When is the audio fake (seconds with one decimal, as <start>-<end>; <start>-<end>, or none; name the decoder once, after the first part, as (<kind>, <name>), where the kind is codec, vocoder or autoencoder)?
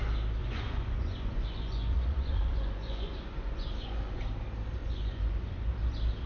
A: 0.4-4.2 (vocoder, Vocos); 4.8-5.7